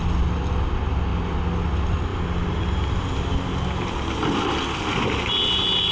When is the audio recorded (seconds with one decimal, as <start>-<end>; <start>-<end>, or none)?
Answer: 0.0-5.9